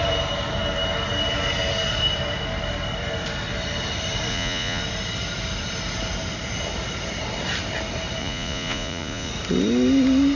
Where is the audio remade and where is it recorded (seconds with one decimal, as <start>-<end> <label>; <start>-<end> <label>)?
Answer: 0.0-4.3 recorded; 4.3-4.8 remade; 4.8-8.2 recorded; 8.2-9.3 remade; 9.3-10.4 recorded